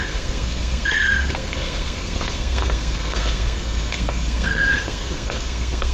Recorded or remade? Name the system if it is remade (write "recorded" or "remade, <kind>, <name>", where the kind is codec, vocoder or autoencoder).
remade, codec, SNAC